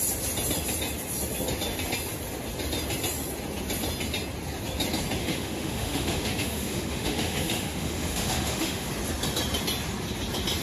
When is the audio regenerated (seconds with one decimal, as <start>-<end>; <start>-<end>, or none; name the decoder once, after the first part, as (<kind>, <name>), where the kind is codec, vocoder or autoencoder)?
5.2-8.9 (autoencoder, DAC-VAE)

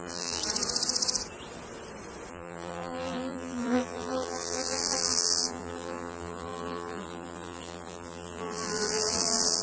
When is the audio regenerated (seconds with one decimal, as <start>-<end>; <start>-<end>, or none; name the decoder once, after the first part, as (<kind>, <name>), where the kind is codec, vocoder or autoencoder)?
0.0-0.4 (vocoder, BigVGAN v2); 2.3-9.6

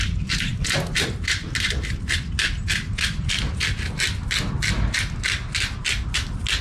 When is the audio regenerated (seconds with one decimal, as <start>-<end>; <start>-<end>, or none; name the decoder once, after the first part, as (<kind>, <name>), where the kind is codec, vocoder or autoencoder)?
none